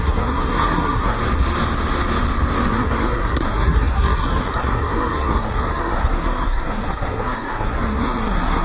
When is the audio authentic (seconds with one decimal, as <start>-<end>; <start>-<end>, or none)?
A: 1.2-2.7